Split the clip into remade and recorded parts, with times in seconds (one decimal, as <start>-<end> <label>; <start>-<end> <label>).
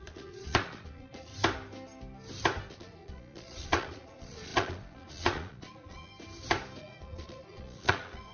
0.0-1.3 remade; 1.3-2.7 recorded; 2.7-6.1 remade; 6.1-6.8 recorded; 6.8-8.3 remade